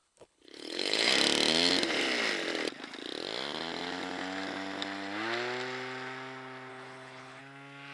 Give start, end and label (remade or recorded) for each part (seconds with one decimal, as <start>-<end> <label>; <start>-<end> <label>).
0.0-1.1 remade; 1.1-6.7 recorded; 6.7-7.4 remade; 7.4-7.9 recorded